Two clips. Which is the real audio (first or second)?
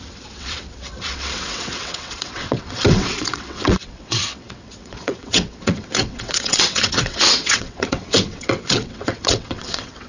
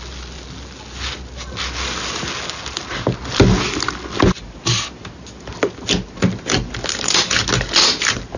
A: second